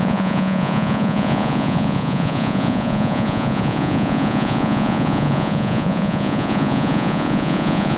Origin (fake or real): fake